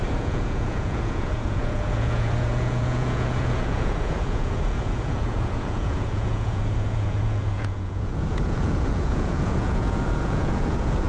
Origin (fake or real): fake